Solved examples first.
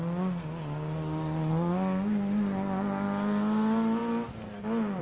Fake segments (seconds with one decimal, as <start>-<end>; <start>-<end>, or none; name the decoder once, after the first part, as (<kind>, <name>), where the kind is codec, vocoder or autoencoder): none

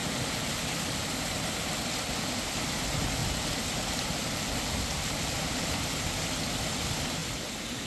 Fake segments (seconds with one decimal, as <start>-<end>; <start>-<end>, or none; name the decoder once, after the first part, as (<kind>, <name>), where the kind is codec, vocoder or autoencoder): none

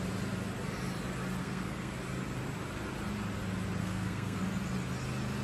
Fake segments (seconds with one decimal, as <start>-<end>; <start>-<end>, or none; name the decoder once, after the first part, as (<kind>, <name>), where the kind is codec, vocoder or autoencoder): 1.4-1.9 (codec, SNAC); 3.8-4.4

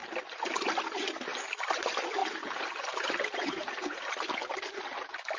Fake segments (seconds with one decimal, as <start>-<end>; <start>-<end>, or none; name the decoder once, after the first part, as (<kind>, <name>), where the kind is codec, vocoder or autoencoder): 2.2-4.3 (vocoder, BigVGAN v2)

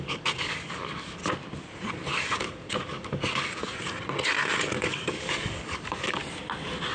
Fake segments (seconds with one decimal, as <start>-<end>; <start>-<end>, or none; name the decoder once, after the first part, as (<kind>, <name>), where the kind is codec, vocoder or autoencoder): 0.0-1.2 (codec, DAC); 2.1-3.6; 4.8-6.2